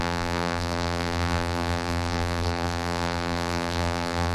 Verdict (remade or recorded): remade